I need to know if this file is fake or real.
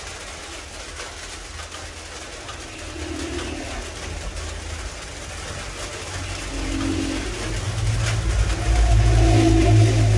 real